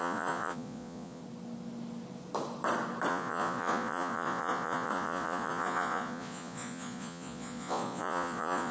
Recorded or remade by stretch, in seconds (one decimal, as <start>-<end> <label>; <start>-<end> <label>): 0.0-1.2 remade; 1.2-3.1 recorded; 3.1-8.7 remade